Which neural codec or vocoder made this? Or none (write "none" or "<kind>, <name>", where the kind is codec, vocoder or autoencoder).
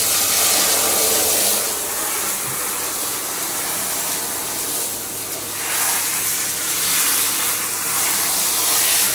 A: none